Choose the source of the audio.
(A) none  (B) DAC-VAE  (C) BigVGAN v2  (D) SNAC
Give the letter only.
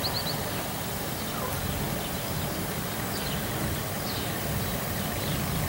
A